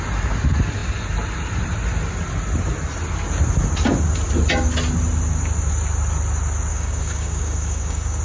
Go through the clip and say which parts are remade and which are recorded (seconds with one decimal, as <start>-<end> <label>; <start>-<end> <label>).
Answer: 0.0-6.7 recorded; 6.7-8.2 remade